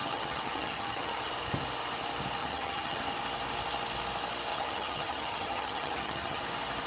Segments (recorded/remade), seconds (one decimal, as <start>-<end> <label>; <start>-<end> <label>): 0.0-1.3 remade; 1.3-2.4 recorded; 2.4-3.0 remade; 3.0-4.5 recorded; 4.5-6.4 remade; 6.4-6.9 recorded